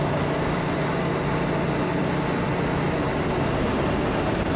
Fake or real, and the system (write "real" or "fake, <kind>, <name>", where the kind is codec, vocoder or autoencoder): real